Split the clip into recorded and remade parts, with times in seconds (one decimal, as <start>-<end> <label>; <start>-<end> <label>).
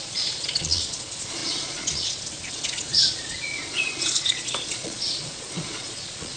0.0-6.4 remade